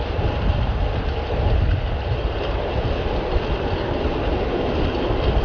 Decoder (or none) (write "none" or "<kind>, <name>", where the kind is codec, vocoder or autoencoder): none